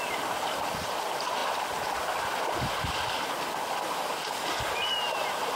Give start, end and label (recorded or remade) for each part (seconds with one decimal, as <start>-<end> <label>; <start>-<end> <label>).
0.0-5.6 recorded